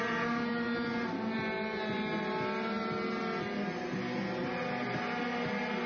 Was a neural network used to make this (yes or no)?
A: no